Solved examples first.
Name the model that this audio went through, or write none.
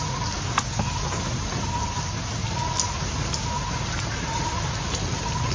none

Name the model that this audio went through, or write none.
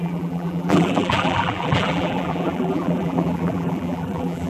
vocoder, BigVGAN v2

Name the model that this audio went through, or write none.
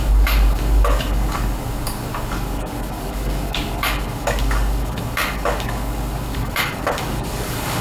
codec, DAC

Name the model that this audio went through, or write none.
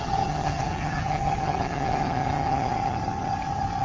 vocoder, HiFi-GAN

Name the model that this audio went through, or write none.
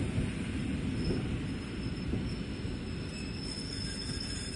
none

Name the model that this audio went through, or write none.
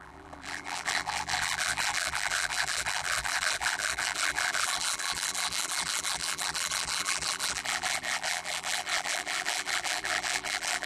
vocoder, BigVGAN v2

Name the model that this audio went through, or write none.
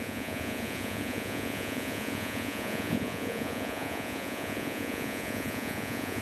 vocoder, Vocos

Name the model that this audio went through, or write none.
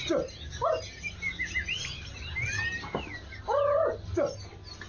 none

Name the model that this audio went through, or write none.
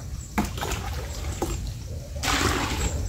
vocoder, BigVGAN v2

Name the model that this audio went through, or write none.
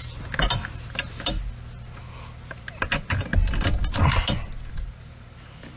none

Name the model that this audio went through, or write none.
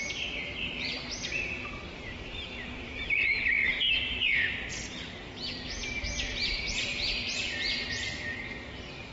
vocoder, BigVGAN v2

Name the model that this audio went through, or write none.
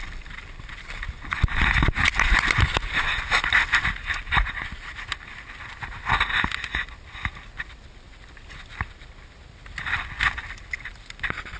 none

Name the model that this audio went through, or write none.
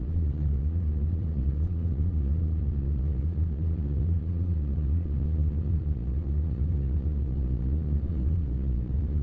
vocoder, Vocos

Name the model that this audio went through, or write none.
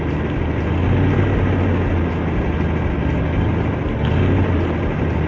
none